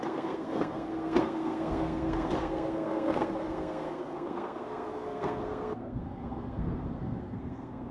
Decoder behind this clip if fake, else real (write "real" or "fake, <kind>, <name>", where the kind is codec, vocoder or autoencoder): fake, codec, SNAC